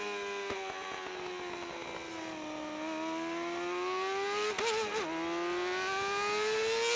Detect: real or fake real